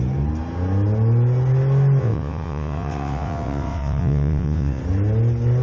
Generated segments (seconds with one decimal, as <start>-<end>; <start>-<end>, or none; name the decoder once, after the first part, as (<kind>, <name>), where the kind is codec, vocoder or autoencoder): 2.0-4.8 (vocoder, WaveNeXt)